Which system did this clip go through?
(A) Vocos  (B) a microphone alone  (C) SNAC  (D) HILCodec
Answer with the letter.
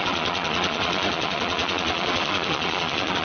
A